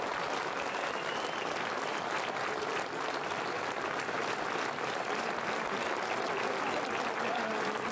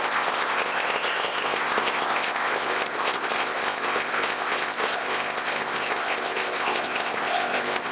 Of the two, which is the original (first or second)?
first